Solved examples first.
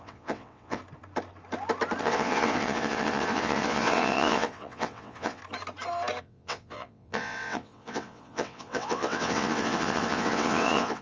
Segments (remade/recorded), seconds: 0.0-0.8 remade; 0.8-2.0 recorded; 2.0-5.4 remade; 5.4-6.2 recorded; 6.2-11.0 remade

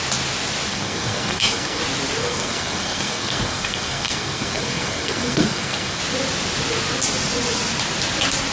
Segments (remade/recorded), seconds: 0.0-0.7 recorded; 0.7-1.8 remade; 1.8-2.2 recorded; 2.2-6.0 remade; 6.0-8.5 recorded

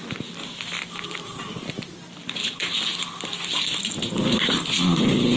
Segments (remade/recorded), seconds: 0.0-5.4 recorded

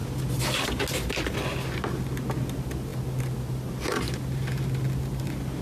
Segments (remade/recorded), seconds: 0.0-5.6 recorded

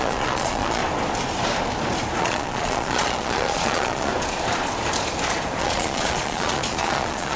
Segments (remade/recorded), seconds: 0.0-0.8 remade; 0.8-2.2 recorded; 2.2-4.1 remade; 4.1-5.6 recorded; 5.6-7.4 remade

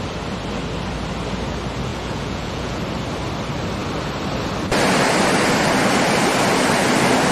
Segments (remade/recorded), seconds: 0.0-1.9 recorded; 1.9-2.8 remade; 2.8-7.3 recorded